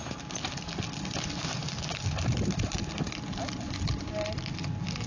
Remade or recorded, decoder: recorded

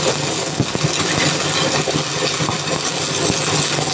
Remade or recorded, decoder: recorded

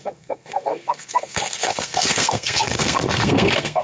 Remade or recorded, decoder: remade, codec, SNAC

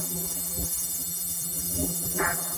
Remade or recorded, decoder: remade, vocoder, BigVGAN v2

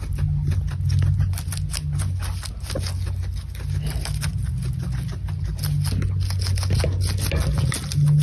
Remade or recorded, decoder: recorded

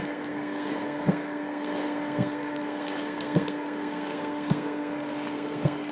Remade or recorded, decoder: remade, codec, SNAC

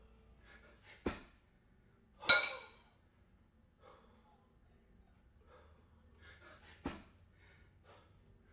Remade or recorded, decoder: recorded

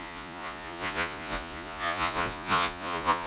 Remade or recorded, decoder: remade, vocoder, Vocos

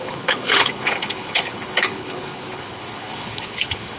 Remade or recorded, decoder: remade, codec, HILCodec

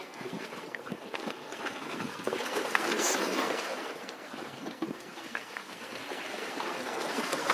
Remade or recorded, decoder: remade, codec, SNAC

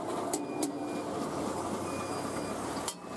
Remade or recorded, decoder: recorded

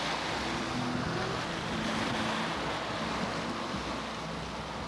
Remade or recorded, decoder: recorded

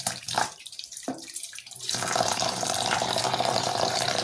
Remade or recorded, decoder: remade, vocoder, BigVGAN v2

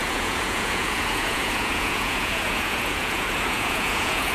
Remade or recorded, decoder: remade, vocoder, Vocos